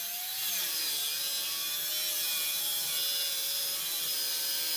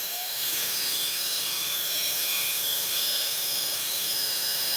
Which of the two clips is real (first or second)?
first